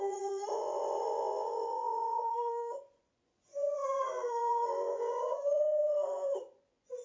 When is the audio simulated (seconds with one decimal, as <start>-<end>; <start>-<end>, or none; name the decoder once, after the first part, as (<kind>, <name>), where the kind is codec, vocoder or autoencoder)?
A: 0.0-7.0 (vocoder, Vocos)